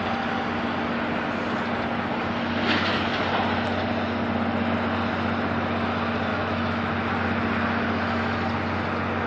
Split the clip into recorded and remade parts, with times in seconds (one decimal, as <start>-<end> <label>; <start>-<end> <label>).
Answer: 0.0-6.3 recorded; 6.3-6.9 remade; 6.9-9.3 recorded